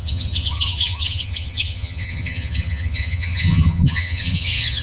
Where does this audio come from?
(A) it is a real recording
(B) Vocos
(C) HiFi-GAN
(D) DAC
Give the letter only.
C